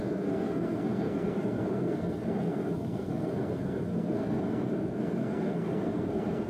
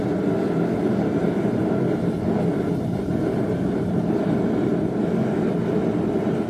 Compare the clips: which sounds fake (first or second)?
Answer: first